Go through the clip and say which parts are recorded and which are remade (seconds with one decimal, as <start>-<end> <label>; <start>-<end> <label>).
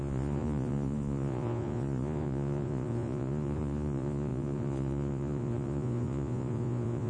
0.0-7.1 remade